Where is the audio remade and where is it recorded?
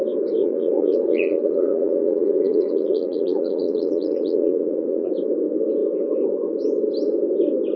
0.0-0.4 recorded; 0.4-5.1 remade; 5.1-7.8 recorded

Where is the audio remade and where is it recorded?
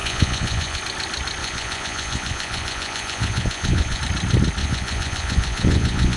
0.0-0.8 remade; 0.8-1.4 recorded; 1.4-4.0 remade; 4.0-4.6 recorded; 4.6-6.2 remade